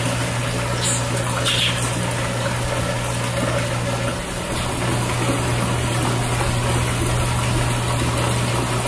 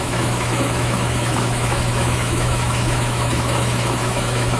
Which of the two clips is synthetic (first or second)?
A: second